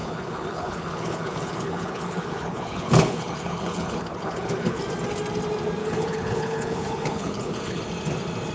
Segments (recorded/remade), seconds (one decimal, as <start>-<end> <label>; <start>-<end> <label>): 0.0-4.8 remade; 4.8-5.8 recorded; 5.8-7.8 remade; 7.8-8.5 recorded